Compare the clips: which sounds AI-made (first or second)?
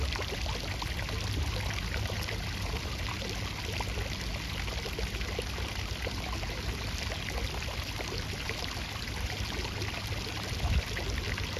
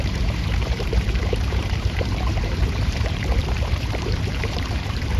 second